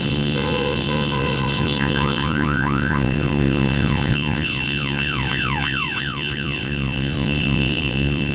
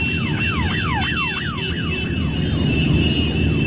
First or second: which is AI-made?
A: first